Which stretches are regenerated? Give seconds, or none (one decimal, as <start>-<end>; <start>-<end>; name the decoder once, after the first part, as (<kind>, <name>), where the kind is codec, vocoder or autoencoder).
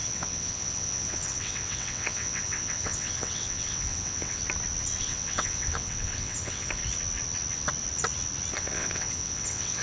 0.0-4.4 (vocoder, WaveNeXt); 5.0-6.8; 8.5-9.8